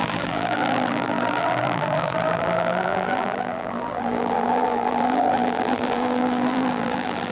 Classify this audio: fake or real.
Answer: fake